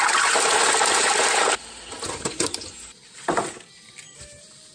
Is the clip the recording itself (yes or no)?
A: yes